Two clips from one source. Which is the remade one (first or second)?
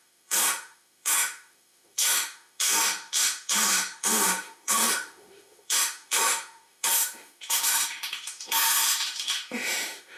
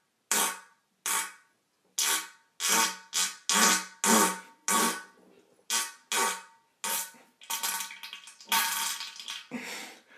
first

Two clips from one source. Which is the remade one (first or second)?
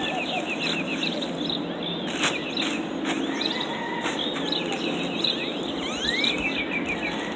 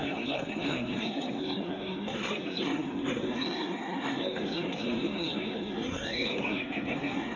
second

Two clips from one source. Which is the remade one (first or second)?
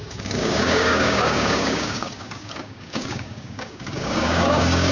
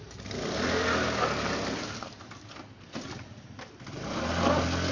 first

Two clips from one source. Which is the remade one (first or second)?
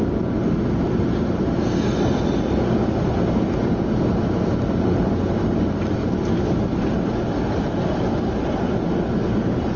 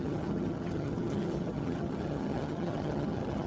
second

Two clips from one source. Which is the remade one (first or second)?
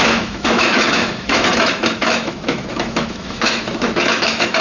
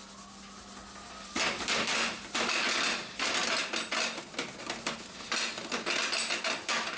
first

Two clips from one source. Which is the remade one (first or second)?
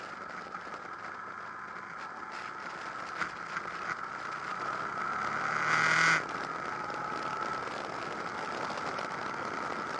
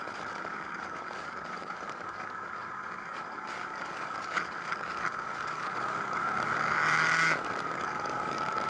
second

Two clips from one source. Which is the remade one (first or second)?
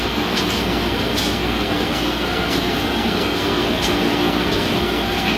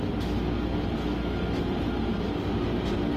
first